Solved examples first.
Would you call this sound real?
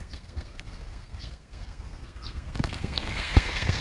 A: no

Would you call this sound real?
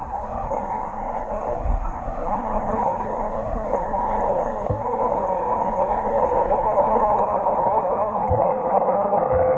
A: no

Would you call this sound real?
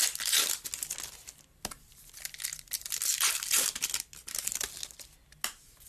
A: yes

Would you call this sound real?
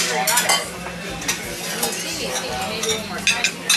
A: yes